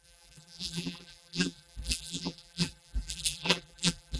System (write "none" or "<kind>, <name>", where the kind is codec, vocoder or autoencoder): vocoder, BigVGAN v2